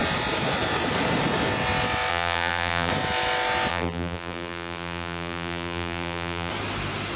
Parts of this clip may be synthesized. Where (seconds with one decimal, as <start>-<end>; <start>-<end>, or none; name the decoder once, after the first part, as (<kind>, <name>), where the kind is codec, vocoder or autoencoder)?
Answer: 2.1-2.9 (vocoder, BigVGAN v2); 3.7-6.5